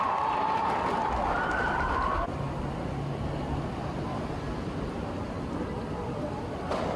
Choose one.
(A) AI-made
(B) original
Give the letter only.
B